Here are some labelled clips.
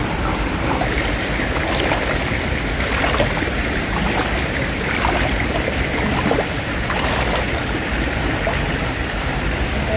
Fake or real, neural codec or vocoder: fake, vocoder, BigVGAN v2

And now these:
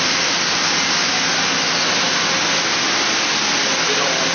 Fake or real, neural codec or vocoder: real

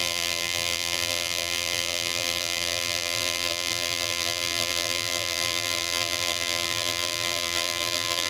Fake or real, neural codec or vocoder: fake, vocoder, BigVGAN v2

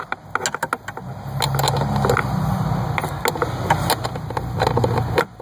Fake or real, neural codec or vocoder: real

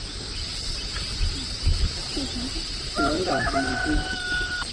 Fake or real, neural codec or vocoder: real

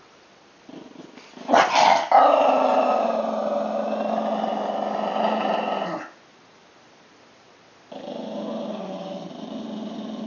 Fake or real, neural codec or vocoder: real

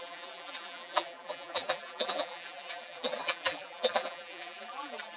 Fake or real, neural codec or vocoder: fake, vocoder, BigVGAN v2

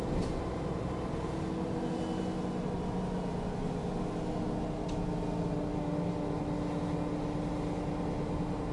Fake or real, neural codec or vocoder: real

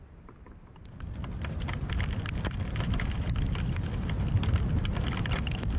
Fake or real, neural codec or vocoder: fake, vocoder, BigVGAN v2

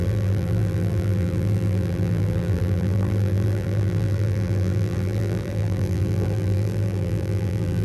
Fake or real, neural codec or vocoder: fake, vocoder, BigVGAN v2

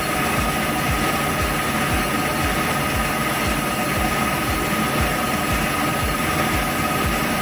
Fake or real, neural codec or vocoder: real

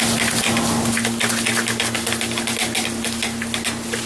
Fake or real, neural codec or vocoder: real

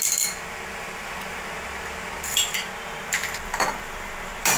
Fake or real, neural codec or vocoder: fake, vocoder, BigVGAN v2